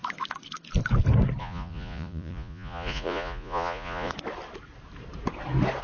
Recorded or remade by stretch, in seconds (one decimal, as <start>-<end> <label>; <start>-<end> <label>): 0.0-1.4 recorded; 1.4-4.1 remade; 4.1-5.8 recorded